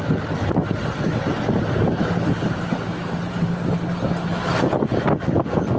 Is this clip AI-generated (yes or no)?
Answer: no